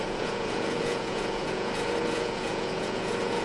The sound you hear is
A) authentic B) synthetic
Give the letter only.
B